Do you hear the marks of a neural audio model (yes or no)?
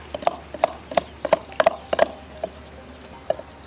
no